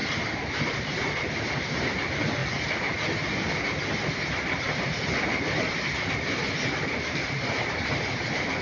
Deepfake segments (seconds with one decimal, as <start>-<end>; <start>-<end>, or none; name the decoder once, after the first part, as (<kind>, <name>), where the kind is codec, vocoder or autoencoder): 0.6-2.4 (vocoder, BigVGAN v2); 6.7-8.6